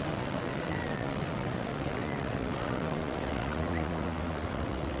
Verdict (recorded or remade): remade